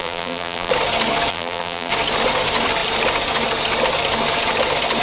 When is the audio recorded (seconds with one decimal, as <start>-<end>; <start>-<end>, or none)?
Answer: 0.7-1.3; 1.9-5.0